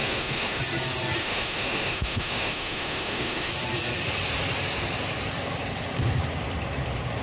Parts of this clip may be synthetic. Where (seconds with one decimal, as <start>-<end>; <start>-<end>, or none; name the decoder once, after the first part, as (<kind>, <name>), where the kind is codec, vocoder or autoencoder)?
0.0-0.6 (autoencoder, DAC-VAE); 1.2-3.5